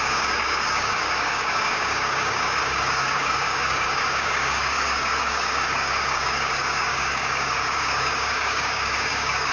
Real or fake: fake